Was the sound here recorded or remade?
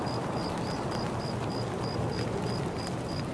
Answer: recorded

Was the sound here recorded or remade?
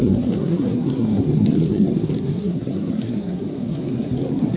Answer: remade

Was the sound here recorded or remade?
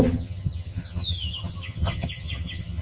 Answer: remade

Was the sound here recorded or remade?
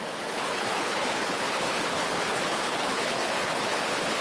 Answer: remade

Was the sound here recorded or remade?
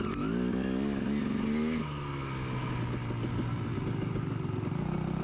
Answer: recorded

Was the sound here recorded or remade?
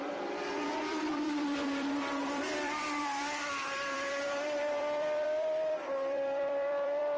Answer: remade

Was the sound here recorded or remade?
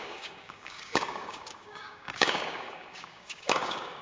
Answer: remade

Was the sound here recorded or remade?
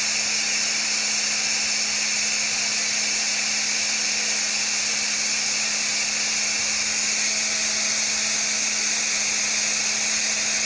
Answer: recorded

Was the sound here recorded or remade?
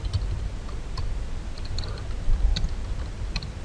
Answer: recorded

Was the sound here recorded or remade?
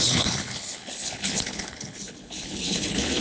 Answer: remade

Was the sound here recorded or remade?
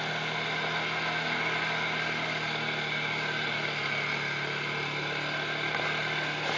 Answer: recorded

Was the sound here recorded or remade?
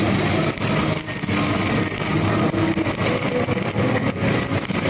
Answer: recorded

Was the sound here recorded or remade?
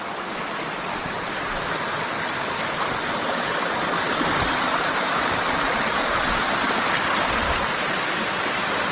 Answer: recorded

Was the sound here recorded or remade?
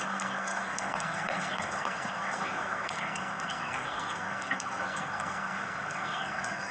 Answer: remade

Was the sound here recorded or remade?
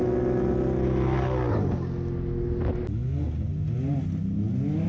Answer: recorded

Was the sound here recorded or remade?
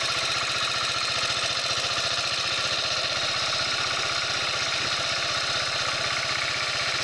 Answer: recorded